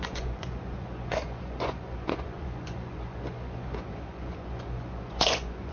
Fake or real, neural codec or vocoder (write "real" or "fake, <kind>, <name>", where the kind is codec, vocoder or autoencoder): fake, vocoder, Vocos